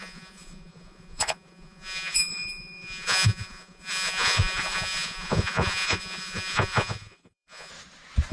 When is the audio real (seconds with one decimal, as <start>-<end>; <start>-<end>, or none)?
7.7-8.3